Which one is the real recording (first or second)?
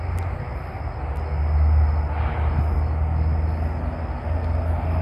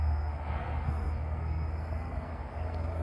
first